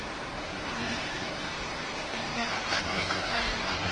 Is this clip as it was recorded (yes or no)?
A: no